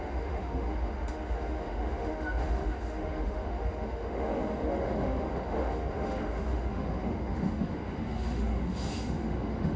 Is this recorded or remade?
remade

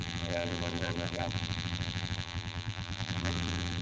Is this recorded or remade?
remade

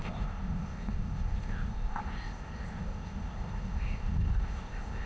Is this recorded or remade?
remade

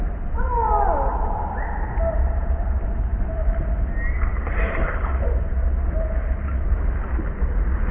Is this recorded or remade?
recorded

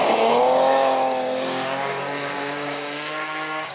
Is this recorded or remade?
remade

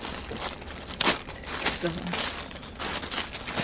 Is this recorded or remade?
recorded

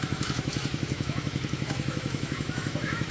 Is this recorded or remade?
remade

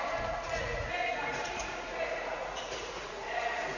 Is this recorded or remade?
remade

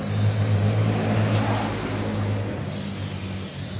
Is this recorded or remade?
recorded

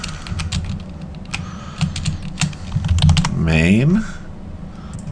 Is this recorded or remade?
recorded